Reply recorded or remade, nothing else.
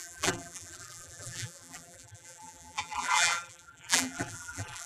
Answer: remade